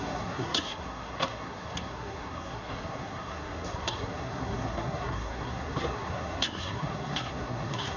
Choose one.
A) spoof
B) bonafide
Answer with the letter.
A